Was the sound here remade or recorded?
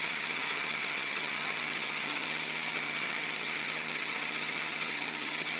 remade